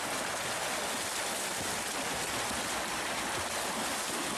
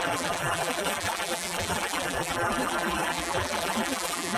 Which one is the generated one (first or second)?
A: second